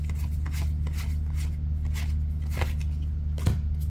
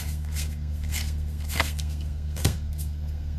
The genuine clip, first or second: first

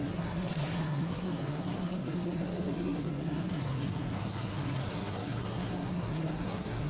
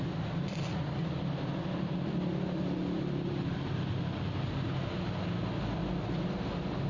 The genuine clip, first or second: second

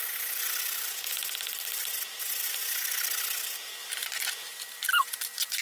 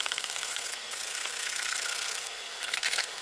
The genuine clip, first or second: first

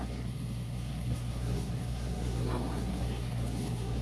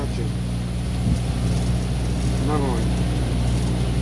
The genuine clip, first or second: second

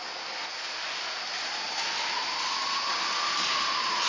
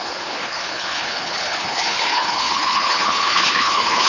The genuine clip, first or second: first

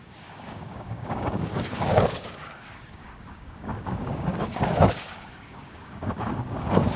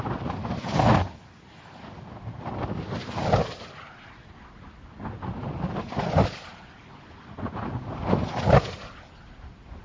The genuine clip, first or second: second